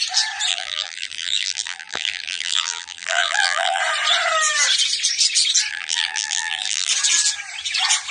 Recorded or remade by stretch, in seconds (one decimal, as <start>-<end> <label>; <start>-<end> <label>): 0.0-0.5 recorded; 0.5-3.8 remade; 3.8-5.7 recorded; 5.7-6.9 remade; 6.9-8.1 recorded